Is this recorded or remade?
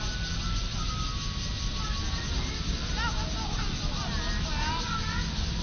recorded